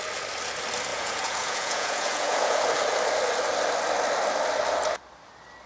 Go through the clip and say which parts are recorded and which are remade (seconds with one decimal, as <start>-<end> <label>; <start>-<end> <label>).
0.0-0.9 recorded; 0.9-2.6 remade; 2.6-5.7 recorded